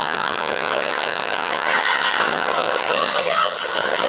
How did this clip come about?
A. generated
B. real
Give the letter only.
A